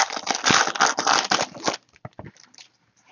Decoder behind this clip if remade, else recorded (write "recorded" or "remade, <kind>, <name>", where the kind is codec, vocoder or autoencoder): recorded